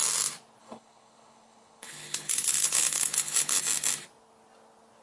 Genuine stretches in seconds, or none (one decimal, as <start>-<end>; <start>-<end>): 0.0-0.6; 3.6-5.0